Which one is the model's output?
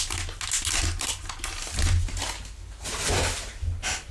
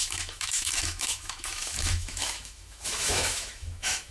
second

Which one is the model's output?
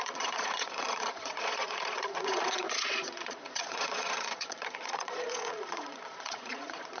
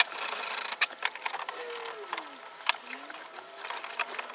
first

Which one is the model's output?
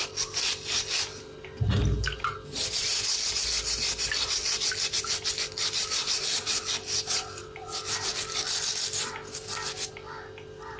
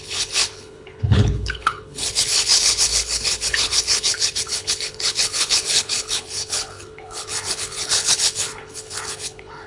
second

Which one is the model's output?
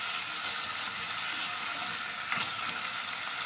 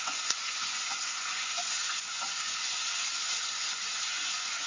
second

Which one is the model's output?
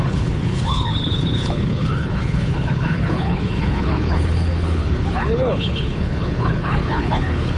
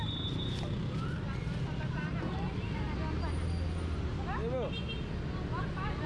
first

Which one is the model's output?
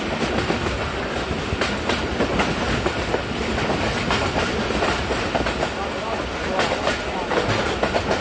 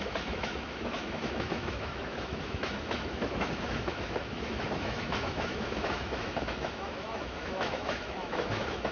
second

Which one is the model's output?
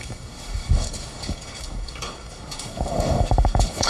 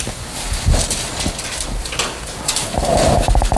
first